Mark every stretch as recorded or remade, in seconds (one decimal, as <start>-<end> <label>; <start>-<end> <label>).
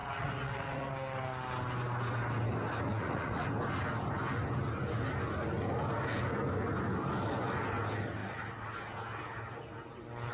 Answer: 0.0-0.9 remade; 0.9-2.9 recorded; 2.9-3.5 remade; 3.5-10.3 recorded